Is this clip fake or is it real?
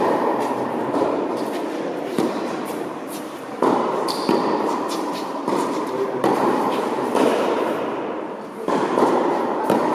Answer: fake